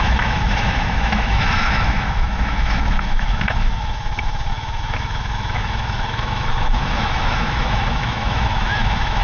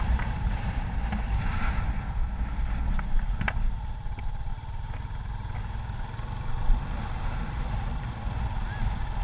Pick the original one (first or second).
second